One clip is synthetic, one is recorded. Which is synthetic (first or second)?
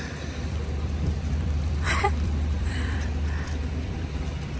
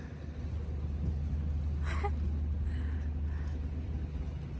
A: first